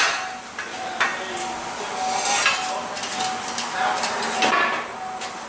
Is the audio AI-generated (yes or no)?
no